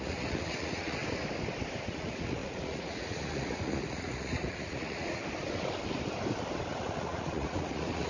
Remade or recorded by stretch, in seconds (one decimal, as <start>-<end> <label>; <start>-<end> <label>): 0.0-1.0 remade; 1.0-1.8 recorded; 1.8-5.2 remade; 5.2-6.7 recorded; 6.7-8.1 remade